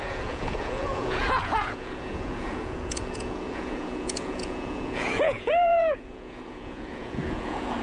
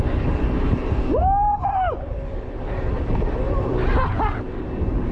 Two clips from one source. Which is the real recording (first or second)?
second